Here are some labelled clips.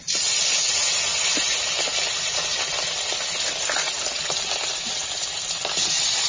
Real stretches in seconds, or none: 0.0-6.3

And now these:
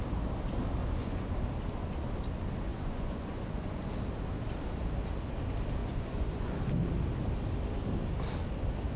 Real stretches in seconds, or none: 0.0-0.8; 1.3-2.7; 3.9-5.8; 6.5-9.0

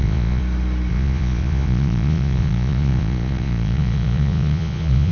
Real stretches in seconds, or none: 0.4-0.9